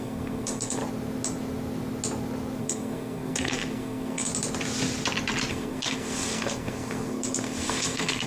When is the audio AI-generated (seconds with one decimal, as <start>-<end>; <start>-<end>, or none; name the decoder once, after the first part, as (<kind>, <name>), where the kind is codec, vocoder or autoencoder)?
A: 0.0-0.8 (codec, SNAC); 2.6-4.3; 5.5-8.3